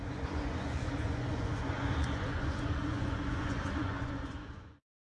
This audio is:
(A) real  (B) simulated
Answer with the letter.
B